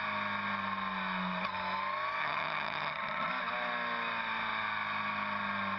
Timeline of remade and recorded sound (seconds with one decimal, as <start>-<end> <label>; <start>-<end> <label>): 0.0-2.2 recorded; 2.2-3.3 remade; 3.3-5.8 recorded